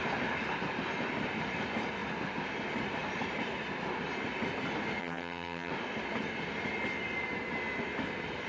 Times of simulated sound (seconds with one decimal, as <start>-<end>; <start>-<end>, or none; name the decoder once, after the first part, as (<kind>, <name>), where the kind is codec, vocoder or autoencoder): 5.0-5.7 (vocoder, HiFi-GAN)